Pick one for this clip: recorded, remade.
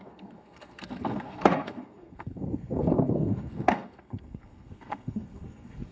remade